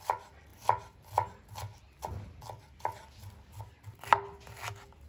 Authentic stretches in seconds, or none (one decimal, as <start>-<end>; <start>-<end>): 0.0-5.1